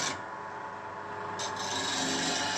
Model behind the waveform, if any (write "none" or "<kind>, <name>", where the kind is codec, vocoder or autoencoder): none